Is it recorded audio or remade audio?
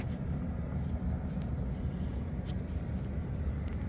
recorded